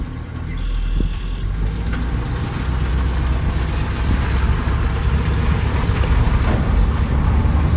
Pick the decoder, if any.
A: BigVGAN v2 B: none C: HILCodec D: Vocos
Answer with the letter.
B